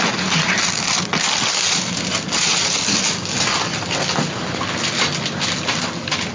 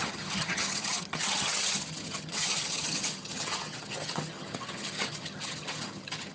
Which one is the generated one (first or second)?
second